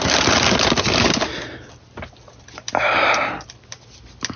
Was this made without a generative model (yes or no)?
yes